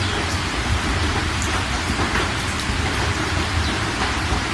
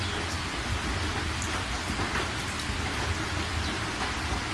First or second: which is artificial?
first